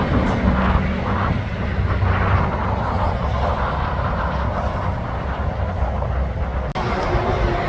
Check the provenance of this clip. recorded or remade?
recorded